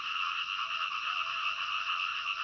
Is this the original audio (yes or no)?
yes